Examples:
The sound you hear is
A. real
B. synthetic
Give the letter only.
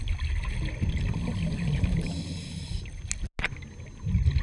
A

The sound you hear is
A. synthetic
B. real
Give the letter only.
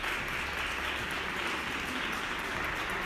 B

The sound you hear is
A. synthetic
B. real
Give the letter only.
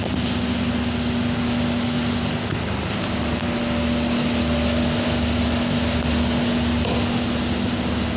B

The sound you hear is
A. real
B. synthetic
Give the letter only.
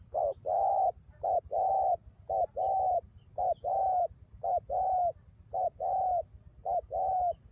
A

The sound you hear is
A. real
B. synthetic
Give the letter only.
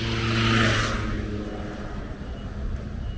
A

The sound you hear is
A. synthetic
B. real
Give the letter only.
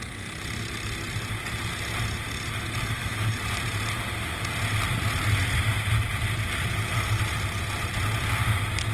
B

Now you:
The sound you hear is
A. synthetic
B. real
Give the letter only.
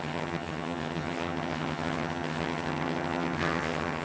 A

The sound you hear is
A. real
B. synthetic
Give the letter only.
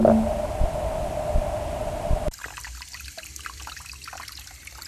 A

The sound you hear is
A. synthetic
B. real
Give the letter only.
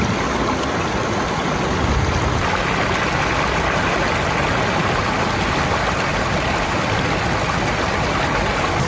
B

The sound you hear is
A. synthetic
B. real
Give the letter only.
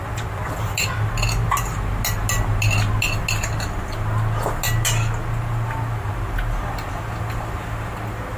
B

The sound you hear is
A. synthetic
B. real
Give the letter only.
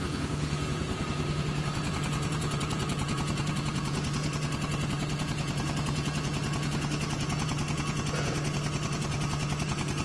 A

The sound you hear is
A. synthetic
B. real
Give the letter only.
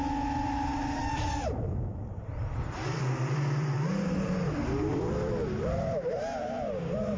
A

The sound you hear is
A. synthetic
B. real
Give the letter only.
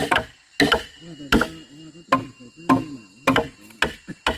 B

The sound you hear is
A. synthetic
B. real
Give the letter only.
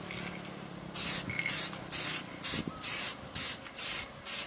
B